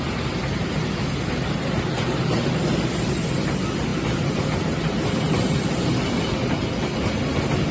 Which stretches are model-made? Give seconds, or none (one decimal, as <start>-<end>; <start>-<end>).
none